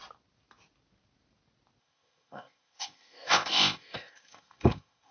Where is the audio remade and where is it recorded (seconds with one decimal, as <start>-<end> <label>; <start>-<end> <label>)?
0.0-1.8 recorded; 1.8-5.1 remade